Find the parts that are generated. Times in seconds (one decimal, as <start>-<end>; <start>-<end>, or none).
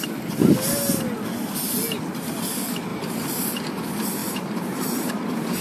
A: 2.9-3.4; 4.2-5.1